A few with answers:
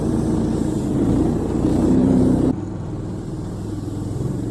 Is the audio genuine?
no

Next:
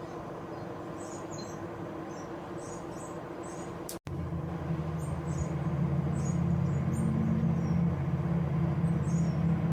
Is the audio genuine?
yes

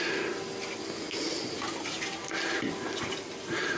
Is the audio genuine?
yes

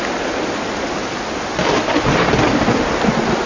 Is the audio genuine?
yes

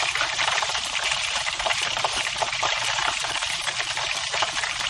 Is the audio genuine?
no